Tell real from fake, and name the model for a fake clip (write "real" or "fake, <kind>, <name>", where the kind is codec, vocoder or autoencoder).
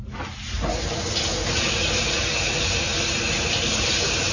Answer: real